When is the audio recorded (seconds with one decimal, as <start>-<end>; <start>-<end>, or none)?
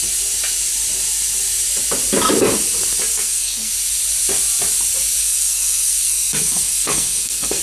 0.0-3.1; 3.7-5.2